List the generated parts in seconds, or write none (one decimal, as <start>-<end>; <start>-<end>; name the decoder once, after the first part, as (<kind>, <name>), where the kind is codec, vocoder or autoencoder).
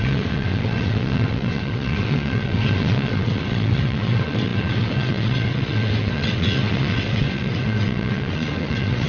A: 0.0-9.1 (vocoder, WaveNeXt)